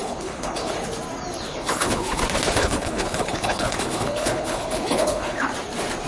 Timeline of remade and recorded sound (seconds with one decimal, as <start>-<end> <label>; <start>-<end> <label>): 0.0-0.7 remade; 0.7-1.5 recorded; 1.5-2.2 remade; 2.2-2.6 recorded; 2.6-5.5 remade; 5.5-6.1 recorded